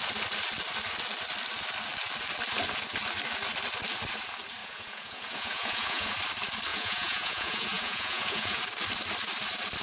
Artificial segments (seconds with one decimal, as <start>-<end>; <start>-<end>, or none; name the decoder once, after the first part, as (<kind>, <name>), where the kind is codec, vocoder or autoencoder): 4.6-6.1 (vocoder, Vocos); 6.7-8.6